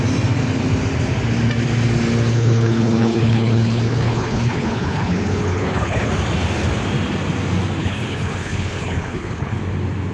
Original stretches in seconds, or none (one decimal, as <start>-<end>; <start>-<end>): 0.0-2.3; 6.1-7.8; 9.6-10.1